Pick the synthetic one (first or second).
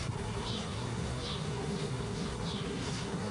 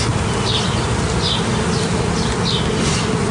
first